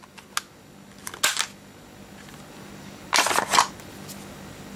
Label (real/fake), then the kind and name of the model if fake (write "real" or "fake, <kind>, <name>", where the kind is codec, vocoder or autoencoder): real